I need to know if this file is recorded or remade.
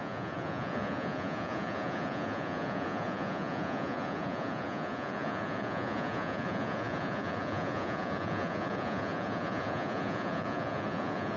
remade